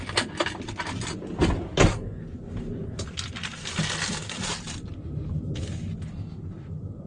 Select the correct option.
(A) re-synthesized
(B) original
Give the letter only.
B